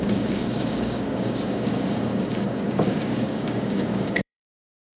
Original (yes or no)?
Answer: no